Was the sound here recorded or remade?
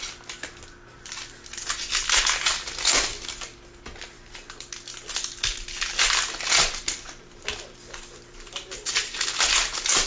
recorded